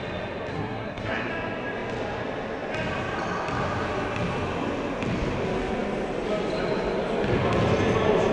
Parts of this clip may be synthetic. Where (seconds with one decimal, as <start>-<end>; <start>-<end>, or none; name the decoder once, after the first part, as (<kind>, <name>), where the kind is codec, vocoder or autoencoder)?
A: 0.5-1.3 (codec, SNAC)